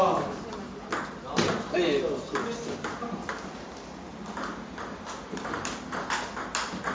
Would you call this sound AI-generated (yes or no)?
no